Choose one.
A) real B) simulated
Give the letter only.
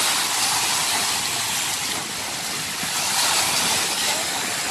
A